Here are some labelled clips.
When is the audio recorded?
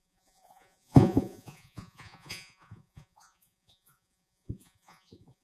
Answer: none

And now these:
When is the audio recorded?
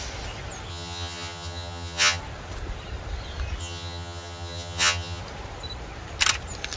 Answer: 0.0-0.7; 2.2-3.6; 5.2-6.8